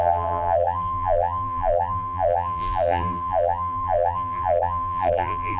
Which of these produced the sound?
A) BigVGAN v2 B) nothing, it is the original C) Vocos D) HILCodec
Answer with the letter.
A